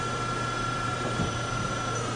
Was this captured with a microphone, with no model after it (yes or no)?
no